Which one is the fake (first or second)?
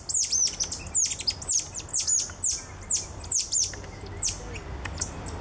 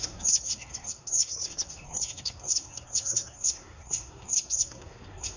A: second